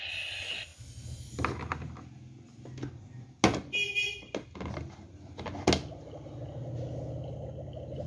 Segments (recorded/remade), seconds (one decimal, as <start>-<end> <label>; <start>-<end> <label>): 0.0-8.1 recorded